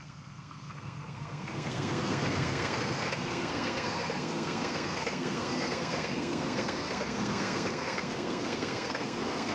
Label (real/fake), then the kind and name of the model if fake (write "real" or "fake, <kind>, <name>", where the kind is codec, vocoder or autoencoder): fake, codec, SNAC